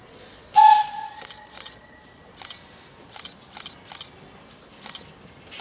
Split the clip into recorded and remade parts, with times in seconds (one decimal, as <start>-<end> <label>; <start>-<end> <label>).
0.0-1.8 remade; 1.8-5.6 recorded